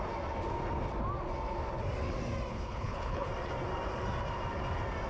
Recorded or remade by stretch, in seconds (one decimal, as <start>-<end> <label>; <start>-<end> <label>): 0.0-2.5 recorded; 2.5-3.3 remade; 3.3-5.1 recorded